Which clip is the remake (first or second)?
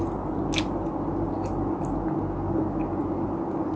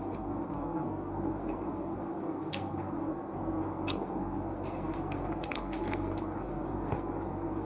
second